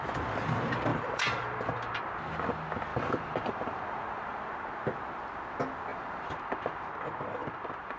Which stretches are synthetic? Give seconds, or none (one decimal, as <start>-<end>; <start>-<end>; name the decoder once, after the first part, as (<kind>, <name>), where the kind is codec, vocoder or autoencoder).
0.9-2.0 (vocoder, BigVGAN v2); 2.9-4.5; 5.9-6.8; 7.4-8.0